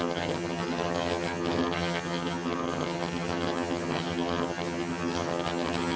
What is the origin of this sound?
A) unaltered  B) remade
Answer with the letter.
B